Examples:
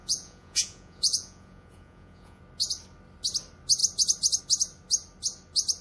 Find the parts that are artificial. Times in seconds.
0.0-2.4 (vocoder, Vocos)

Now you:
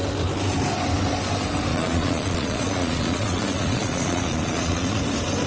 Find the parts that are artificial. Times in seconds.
1.7-5.0 (vocoder, Vocos)

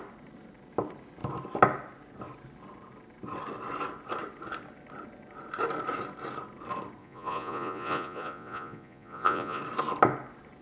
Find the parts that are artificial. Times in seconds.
7.0-9.6 (vocoder, Vocos)

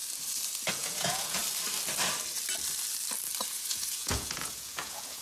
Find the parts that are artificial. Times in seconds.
0.7-1.4 (vocoder, Vocos); 3.5-5.2

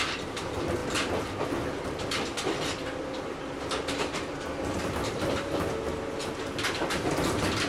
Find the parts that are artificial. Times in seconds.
none

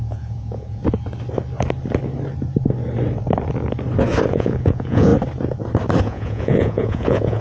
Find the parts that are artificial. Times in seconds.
0.0-0.8 (vocoder, Vocos); 4.3-5.1; 6.0-7.4